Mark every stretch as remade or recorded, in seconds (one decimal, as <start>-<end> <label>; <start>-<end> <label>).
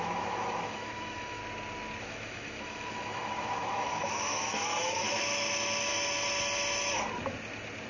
0.0-1.4 remade; 1.4-2.0 recorded; 2.0-5.9 remade; 5.9-7.9 recorded